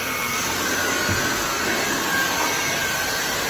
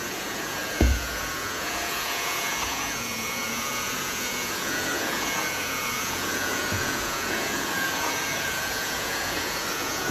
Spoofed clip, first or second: second